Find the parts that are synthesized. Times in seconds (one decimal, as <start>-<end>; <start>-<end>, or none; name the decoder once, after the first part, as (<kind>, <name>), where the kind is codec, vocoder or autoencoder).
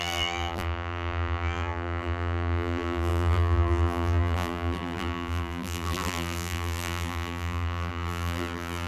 0.0-8.9 (vocoder, BigVGAN v2)